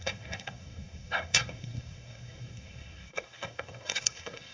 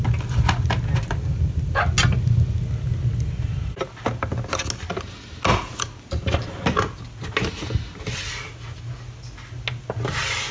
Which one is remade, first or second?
first